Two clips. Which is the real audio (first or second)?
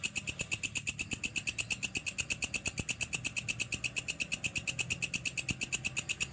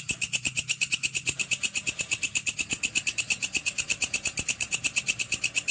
first